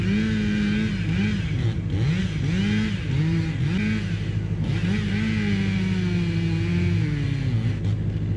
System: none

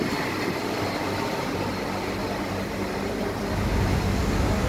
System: none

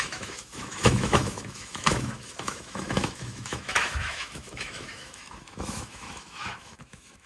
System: autoencoder, DAC-VAE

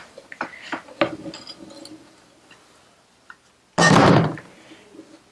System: none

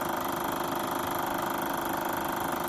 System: none